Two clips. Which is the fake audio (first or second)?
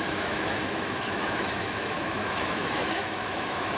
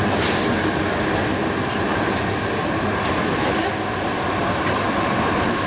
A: first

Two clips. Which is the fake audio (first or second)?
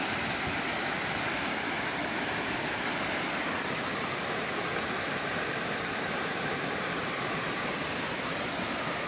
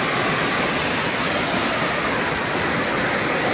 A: first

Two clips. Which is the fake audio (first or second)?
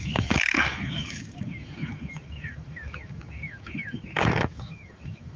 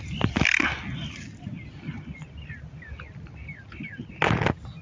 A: first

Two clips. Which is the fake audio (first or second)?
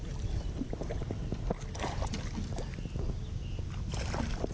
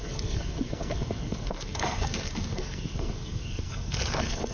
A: second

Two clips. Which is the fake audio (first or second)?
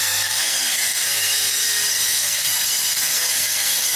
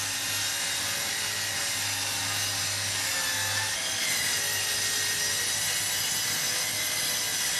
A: first